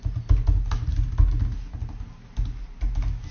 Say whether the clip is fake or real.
real